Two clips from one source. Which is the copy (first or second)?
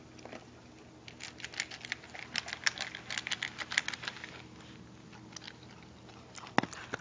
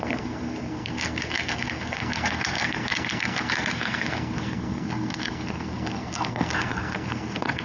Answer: second